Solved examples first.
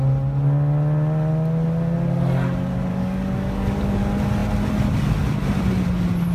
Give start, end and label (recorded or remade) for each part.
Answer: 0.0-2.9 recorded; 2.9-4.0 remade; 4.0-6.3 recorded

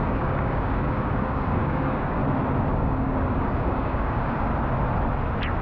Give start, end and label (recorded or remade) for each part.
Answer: 0.0-2.2 remade; 2.2-2.7 recorded; 2.7-4.5 remade; 4.5-5.6 recorded

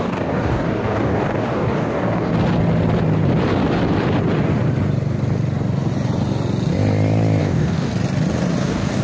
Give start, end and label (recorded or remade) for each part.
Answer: 0.0-2.3 remade; 2.3-7.4 recorded; 7.4-7.9 remade; 7.9-8.6 recorded; 8.6-9.0 remade

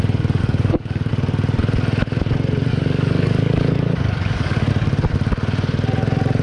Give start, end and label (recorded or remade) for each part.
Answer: 0.0-0.4 recorded; 0.4-1.1 remade; 1.1-2.7 recorded; 2.7-4.7 remade; 4.7-6.4 recorded

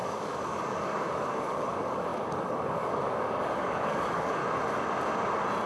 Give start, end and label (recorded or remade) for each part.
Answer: 0.0-4.4 remade; 4.4-5.7 recorded

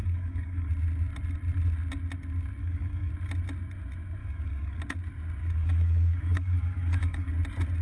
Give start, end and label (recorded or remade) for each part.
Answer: 0.0-0.7 remade; 0.7-2.6 recorded; 2.6-3.1 remade; 3.1-4.2 recorded; 4.2-4.8 remade; 4.8-5.4 recorded; 5.4-7.3 remade; 7.3-7.8 recorded

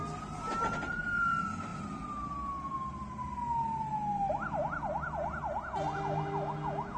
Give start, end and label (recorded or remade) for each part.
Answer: 0.0-7.0 recorded

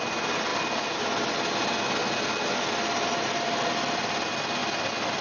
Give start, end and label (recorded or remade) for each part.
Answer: 0.0-5.2 recorded